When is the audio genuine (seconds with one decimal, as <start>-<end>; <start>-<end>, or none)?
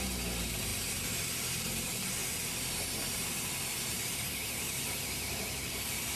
0.0-6.2